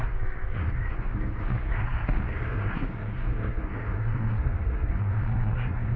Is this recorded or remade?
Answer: remade